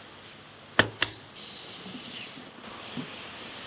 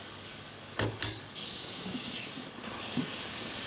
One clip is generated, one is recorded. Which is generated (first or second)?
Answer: second